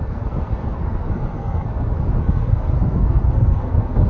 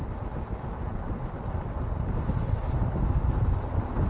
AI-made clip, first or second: first